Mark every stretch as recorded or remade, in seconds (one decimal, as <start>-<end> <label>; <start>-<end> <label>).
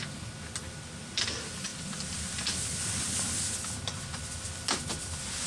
0.0-5.5 recorded